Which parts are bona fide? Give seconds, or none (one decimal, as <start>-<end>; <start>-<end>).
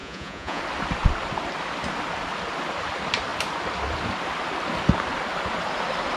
0.6-6.2